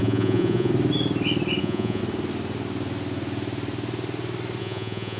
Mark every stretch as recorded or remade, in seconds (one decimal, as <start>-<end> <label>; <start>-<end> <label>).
0.0-0.7 remade; 0.7-1.6 recorded; 1.6-2.0 remade; 2.0-4.6 recorded; 4.6-5.2 remade